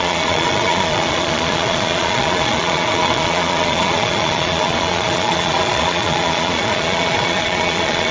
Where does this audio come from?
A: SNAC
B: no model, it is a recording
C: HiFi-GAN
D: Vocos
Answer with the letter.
D